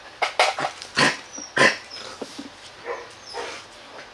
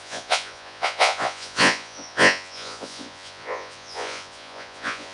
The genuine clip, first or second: first